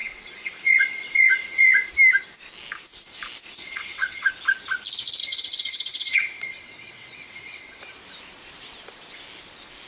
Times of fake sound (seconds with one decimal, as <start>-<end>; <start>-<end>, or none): 0.0-1.9; 3.6-4.3; 5.2-7.8